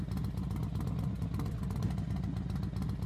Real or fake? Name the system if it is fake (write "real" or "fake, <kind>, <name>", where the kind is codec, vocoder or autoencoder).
real